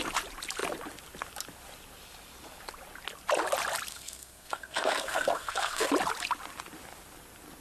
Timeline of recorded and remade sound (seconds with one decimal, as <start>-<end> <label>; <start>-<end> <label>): 0.0-3.9 recorded; 3.9-5.9 remade; 5.9-7.6 recorded